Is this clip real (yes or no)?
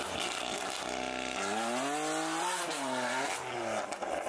yes